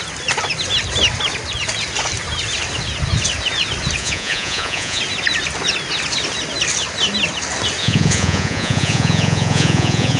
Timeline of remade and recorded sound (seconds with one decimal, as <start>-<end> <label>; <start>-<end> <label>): 0.0-4.0 recorded; 4.0-5.0 remade; 5.0-7.8 recorded; 7.8-10.2 remade

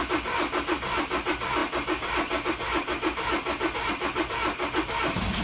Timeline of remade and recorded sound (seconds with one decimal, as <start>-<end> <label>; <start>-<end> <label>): 0.0-5.4 recorded

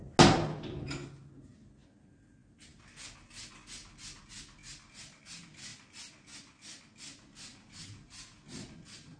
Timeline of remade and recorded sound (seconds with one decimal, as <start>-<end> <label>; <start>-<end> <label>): 0.0-9.2 recorded

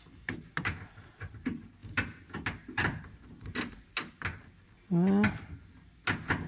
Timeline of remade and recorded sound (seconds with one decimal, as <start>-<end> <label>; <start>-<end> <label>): 0.0-6.5 recorded

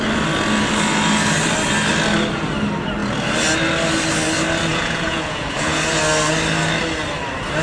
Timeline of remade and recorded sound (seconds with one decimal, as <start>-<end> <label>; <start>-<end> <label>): 0.0-4.7 recorded; 4.7-6.0 remade; 6.0-7.6 recorded

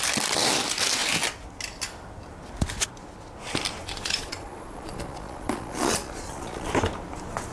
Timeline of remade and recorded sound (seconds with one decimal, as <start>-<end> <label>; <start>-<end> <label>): 0.0-3.8 recorded; 3.8-6.7 remade; 6.7-7.5 recorded

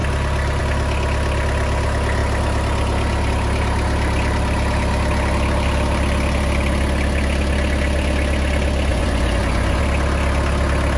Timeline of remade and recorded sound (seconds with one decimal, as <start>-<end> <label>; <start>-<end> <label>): 0.0-8.9 recorded; 8.9-9.8 remade; 9.8-11.0 recorded